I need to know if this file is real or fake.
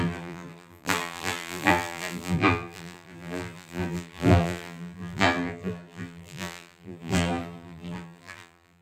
fake